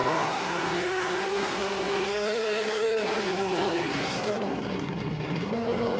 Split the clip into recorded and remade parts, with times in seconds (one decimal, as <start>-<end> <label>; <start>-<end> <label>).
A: 0.0-6.0 remade

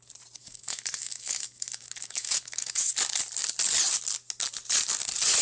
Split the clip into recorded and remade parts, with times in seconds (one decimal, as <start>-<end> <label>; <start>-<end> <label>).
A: 0.0-0.4 recorded; 0.4-2.9 remade; 2.9-5.4 recorded

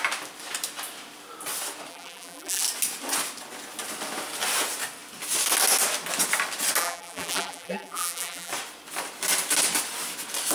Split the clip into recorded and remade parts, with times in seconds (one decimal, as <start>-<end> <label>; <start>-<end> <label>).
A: 0.0-1.9 recorded; 1.9-2.6 remade; 2.6-6.8 recorded; 6.8-8.5 remade; 8.5-10.5 recorded

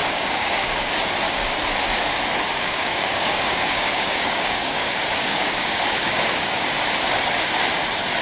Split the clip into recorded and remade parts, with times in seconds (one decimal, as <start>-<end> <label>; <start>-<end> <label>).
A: 0.0-0.9 remade; 0.9-2.5 recorded; 2.5-6.7 remade; 6.7-8.2 recorded